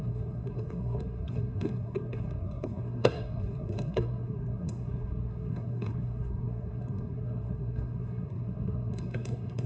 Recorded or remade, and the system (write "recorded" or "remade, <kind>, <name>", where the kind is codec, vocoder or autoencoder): remade, codec, SNAC